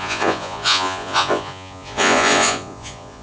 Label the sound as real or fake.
fake